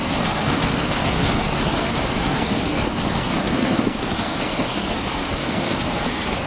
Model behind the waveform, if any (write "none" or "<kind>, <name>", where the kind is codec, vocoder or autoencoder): codec, SNAC